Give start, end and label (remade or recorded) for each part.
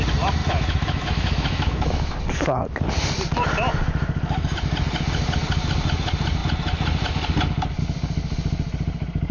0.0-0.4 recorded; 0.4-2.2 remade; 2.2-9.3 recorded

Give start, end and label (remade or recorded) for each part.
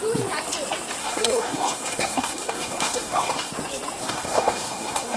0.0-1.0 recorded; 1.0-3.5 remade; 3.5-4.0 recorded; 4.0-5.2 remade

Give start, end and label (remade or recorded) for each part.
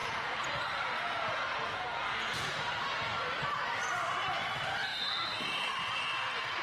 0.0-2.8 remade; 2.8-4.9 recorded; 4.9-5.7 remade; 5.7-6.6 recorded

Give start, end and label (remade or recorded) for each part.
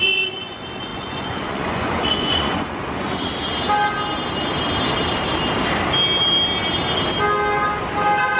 0.0-3.3 remade; 3.3-8.4 recorded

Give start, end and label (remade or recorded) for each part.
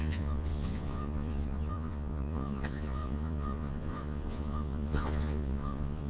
0.0-6.1 remade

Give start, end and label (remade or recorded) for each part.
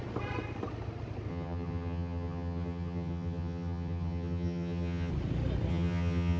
0.0-1.3 recorded; 1.3-5.1 remade; 5.1-5.7 recorded; 5.7-6.4 remade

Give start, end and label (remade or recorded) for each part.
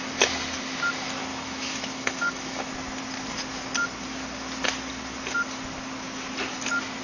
0.0-1.3 recorded; 1.3-2.7 remade; 2.7-7.0 recorded